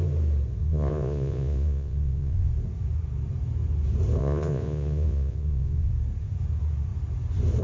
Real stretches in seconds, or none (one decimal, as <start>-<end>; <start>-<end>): 0.0-0.6; 2.5-4.2; 5.9-7.6